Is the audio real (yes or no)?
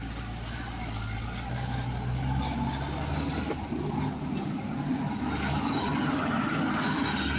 yes